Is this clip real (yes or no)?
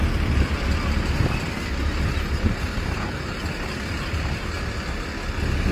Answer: yes